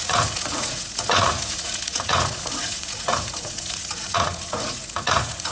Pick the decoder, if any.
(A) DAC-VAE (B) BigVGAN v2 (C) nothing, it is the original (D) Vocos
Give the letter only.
D